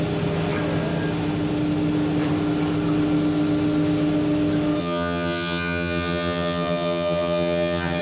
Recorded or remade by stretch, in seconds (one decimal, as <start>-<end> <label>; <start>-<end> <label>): 0.0-4.8 recorded; 4.8-8.0 remade